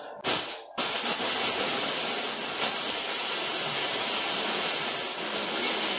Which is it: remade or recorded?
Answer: recorded